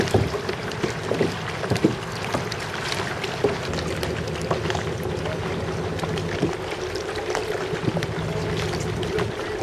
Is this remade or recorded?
recorded